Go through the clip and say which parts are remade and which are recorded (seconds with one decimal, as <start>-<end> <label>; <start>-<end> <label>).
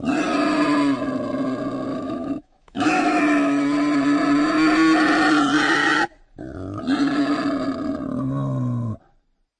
0.0-1.9 recorded; 1.9-3.2 remade; 3.2-9.6 recorded